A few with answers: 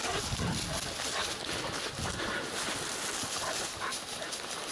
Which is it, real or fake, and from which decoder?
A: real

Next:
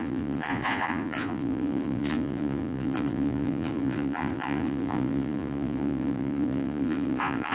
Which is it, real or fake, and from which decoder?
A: fake, vocoder, Vocos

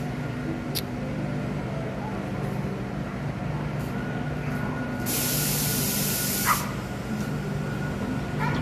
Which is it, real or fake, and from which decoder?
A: real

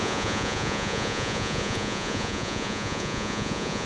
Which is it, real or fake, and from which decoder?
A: fake, vocoder, Vocos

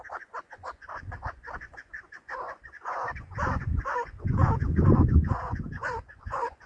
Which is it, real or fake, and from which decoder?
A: fake, vocoder, Vocos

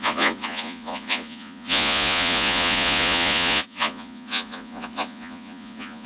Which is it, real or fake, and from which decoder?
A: fake, vocoder, Vocos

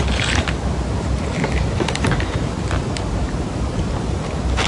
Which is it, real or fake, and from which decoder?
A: real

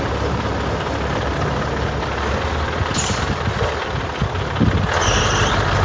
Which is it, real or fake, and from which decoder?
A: real